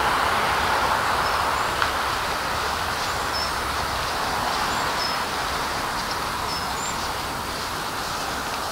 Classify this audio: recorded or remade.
recorded